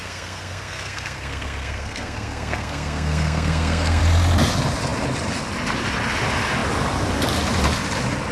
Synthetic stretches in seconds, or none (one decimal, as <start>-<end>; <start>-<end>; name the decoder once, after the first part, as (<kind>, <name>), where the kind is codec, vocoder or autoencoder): 0.0-4.0 (codec, SNAC)